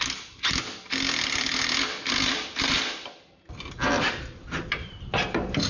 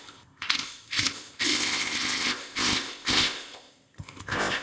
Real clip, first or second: first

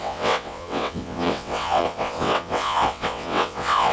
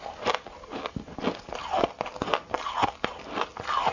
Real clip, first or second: second